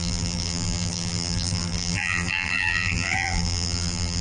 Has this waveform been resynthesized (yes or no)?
yes